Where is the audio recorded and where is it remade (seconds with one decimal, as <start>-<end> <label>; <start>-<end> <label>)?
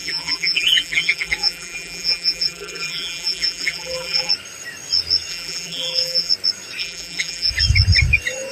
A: 0.0-4.3 remade; 4.3-5.3 recorded; 5.3-6.3 remade; 6.3-6.8 recorded; 6.8-7.5 remade; 7.5-8.5 recorded